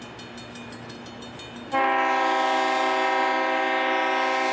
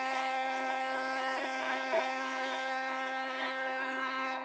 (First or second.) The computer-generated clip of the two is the second